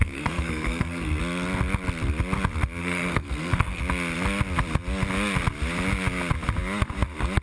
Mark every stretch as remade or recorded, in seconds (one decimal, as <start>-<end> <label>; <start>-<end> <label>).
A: 0.0-1.2 remade; 1.2-2.8 recorded; 2.8-3.8 remade; 3.8-7.4 recorded